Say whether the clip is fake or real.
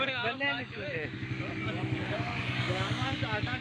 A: fake